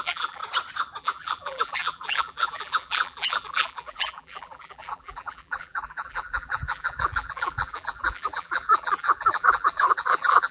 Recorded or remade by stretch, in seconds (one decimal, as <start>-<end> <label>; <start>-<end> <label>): 0.0-0.4 remade; 0.4-1.0 recorded; 1.0-10.5 remade